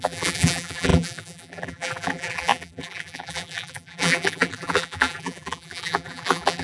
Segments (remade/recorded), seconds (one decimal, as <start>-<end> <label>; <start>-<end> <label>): 0.0-6.6 remade